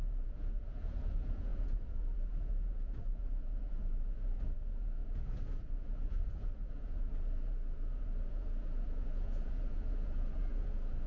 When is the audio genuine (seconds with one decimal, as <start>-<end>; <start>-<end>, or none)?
none